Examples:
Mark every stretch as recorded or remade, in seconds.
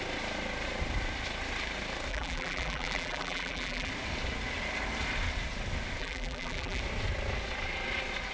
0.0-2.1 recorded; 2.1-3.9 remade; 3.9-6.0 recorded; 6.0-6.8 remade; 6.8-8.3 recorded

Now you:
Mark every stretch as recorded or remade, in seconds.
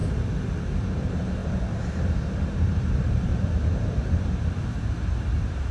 0.0-0.8 recorded; 0.8-3.3 remade; 3.3-4.0 recorded; 4.0-5.7 remade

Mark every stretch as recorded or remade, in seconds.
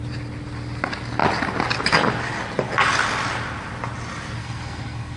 0.0-4.4 recorded; 4.4-5.2 remade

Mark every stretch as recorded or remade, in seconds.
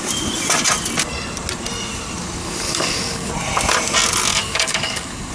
0.0-2.4 recorded; 2.4-3.3 remade; 3.3-4.3 recorded; 4.3-5.3 remade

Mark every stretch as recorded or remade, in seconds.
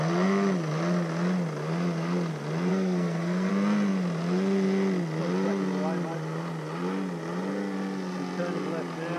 0.0-2.7 recorded; 2.7-3.5 remade; 3.5-9.2 recorded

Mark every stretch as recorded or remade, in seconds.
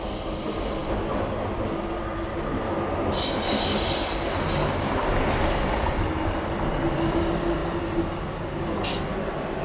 0.0-9.6 recorded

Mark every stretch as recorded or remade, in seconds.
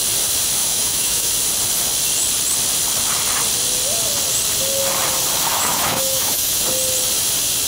0.0-0.6 recorded; 0.6-1.3 remade; 1.3-5.5 recorded; 5.5-6.6 remade; 6.6-7.7 recorded